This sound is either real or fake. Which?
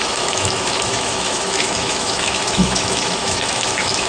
fake